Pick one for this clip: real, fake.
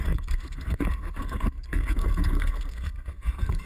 fake